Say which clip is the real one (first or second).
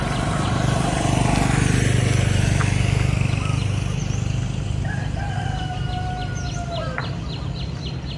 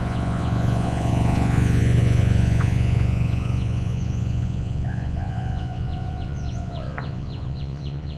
first